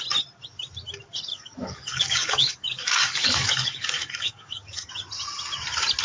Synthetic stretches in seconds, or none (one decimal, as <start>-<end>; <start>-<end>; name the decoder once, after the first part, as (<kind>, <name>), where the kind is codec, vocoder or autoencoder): 1.3-4.9 (codec, DAC)